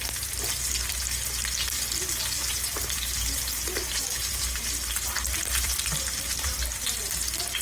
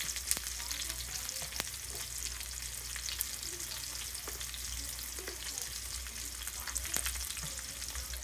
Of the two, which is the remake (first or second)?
first